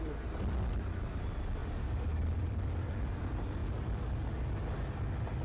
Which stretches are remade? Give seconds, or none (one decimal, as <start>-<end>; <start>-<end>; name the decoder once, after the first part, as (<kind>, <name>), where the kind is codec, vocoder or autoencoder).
1.6-3.2 (vocoder, BigVGAN v2)